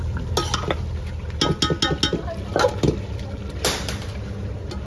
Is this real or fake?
real